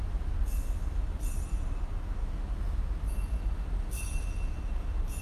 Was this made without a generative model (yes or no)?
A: yes